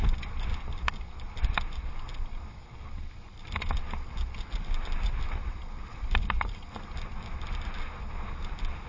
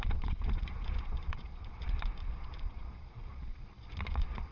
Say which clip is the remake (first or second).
second